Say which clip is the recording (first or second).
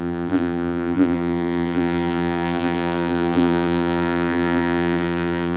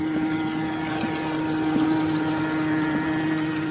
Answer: second